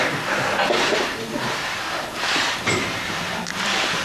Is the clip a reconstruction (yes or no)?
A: yes